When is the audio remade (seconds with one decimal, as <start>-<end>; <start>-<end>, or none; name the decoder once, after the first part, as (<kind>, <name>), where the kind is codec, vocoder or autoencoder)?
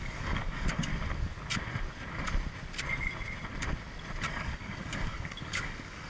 0.0-0.9 (codec, DAC); 4.3-6.1